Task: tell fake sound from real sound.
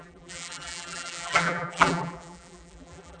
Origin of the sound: fake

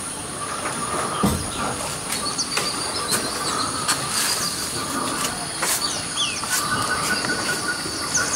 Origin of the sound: real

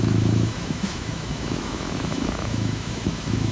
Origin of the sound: fake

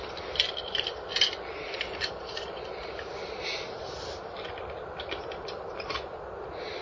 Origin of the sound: real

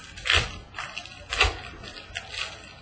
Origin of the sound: real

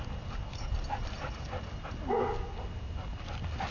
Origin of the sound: real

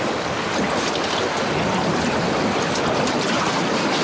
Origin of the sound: real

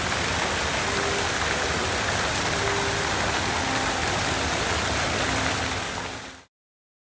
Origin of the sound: real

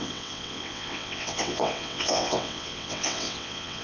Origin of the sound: fake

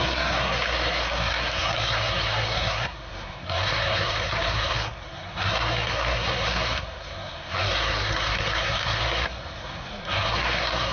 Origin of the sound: fake